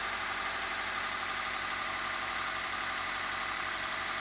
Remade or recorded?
recorded